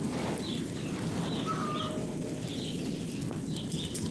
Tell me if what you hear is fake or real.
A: real